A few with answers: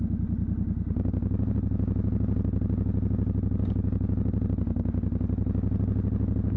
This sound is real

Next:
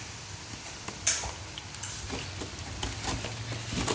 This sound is real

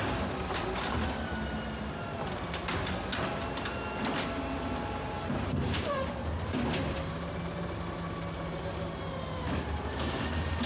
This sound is real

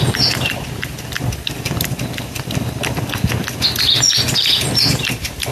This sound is real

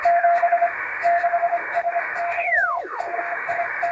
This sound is fake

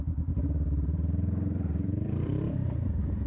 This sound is fake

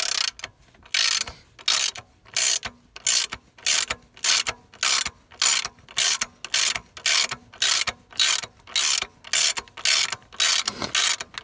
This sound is real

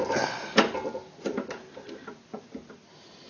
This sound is real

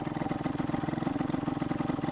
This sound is real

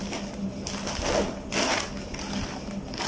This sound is real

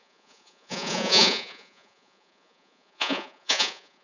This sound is fake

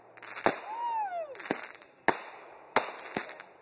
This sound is real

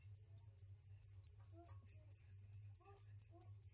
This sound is real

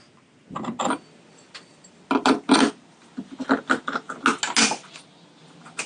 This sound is real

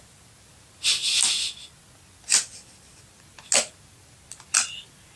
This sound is real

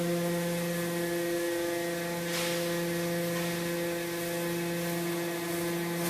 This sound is real